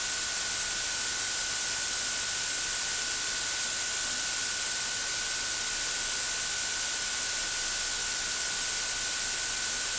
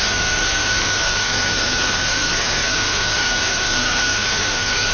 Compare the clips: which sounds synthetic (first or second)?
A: second